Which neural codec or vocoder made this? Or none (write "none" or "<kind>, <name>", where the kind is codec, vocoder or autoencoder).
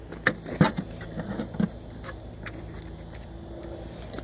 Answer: none